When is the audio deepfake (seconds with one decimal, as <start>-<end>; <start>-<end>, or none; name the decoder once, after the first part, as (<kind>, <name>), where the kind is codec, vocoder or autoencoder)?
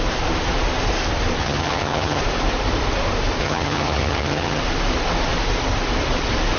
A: 1.4-2.2 (vocoder, HiFi-GAN); 3.4-4.6